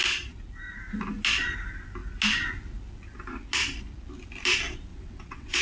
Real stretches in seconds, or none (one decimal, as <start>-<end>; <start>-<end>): 0.0-4.9